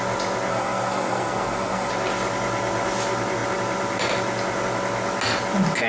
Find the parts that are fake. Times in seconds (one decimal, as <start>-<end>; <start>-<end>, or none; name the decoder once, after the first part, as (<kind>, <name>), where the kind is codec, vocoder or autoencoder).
0.5-1.9 (codec, SNAC)